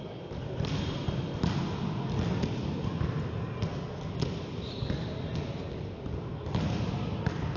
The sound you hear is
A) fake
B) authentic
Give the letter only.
B